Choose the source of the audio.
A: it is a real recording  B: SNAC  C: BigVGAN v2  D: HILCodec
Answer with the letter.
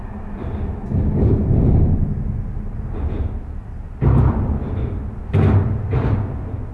A